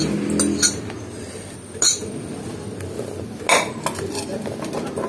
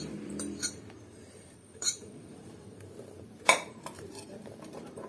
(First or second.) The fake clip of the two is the second